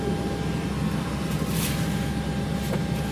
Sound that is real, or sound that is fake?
real